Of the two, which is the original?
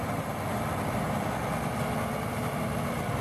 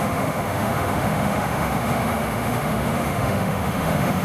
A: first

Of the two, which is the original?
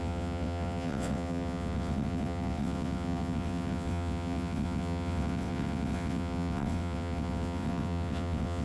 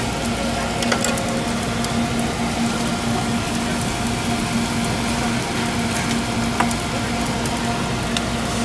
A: second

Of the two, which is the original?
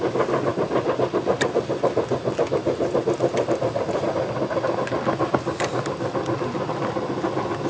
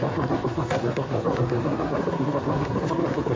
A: first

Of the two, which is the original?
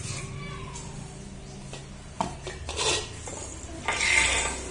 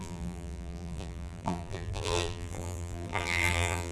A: first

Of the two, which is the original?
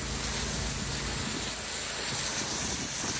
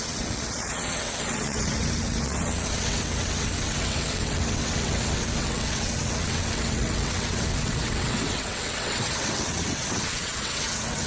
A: first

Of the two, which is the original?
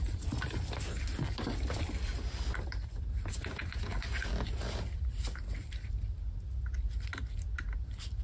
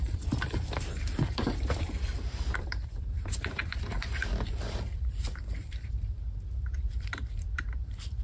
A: first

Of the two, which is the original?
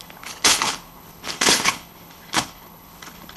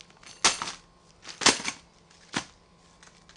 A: second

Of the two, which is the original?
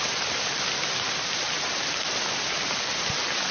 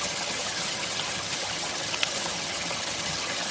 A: first